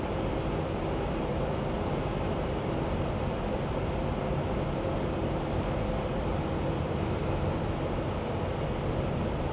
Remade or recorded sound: recorded